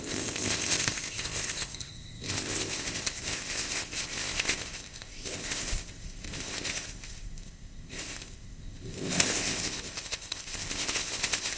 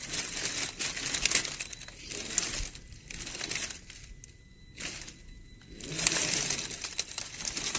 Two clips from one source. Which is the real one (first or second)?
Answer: second